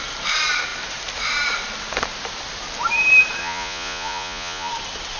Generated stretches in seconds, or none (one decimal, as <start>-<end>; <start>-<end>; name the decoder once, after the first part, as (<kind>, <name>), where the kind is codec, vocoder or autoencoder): 3.4-4.7 (vocoder, Vocos)